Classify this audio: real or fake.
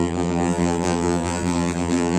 fake